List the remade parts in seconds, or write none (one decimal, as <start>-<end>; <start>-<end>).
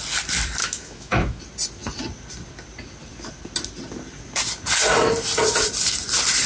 0.6-1.4